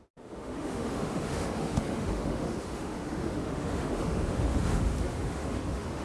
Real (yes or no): no